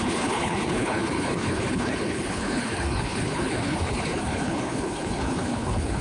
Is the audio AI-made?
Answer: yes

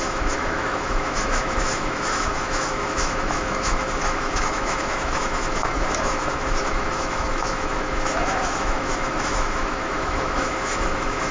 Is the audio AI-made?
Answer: yes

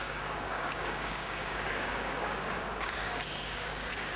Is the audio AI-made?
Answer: yes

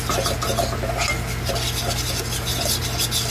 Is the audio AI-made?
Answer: no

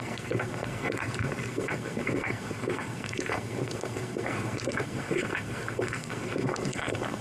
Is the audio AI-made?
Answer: yes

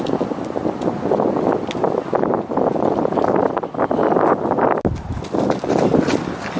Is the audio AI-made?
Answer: no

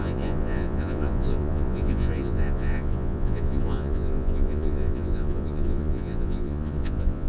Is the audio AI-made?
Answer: yes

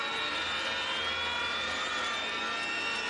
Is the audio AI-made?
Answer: no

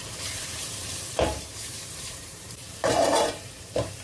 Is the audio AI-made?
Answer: yes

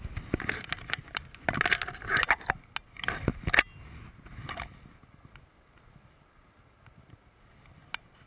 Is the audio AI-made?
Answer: no